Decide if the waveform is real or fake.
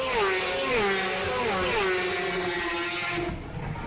real